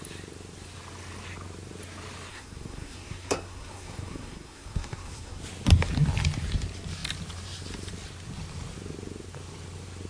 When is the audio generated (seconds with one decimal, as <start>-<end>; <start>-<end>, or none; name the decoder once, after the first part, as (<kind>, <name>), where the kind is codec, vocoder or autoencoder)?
2.3-5.4 (codec, SNAC)